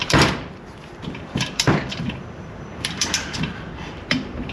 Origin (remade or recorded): remade